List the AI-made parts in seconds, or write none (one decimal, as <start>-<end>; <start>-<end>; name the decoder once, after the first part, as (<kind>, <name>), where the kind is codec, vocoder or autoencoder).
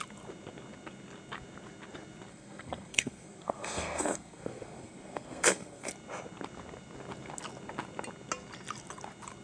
2.3-5.9 (codec, SNAC)